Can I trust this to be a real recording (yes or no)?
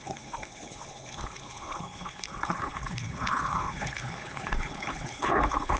no